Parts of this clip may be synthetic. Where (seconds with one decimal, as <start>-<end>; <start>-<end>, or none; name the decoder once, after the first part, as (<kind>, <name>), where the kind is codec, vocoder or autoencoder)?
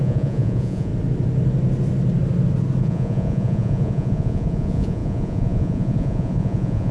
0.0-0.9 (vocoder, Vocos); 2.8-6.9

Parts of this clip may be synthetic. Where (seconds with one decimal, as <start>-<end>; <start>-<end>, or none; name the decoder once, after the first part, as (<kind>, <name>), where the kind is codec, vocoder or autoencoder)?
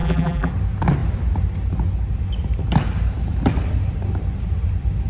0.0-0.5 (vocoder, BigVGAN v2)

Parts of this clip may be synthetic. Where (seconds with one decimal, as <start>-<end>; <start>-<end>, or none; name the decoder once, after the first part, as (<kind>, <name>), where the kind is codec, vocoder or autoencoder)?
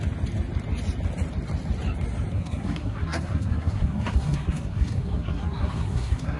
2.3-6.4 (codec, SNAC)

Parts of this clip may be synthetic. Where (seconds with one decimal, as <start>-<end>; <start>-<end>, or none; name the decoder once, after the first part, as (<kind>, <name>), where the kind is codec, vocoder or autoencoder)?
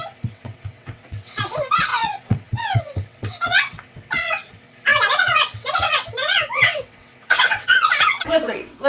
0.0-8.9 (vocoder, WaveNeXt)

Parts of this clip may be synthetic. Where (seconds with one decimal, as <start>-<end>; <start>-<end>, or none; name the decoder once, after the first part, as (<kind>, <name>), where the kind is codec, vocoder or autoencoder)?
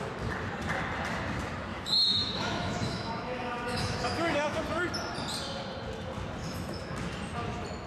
1.7-4.6 (autoencoder, DAC-VAE); 6.4-7.1